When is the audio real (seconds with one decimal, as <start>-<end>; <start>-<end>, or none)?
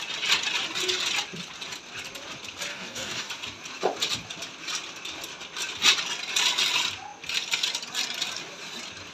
0.0-2.7; 3.3-9.1